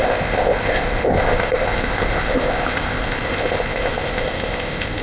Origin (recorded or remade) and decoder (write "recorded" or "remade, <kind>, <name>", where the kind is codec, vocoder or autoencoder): remade, codec, ZipCodec